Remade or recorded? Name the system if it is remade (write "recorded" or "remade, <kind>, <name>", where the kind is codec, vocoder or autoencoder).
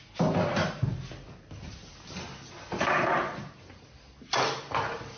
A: recorded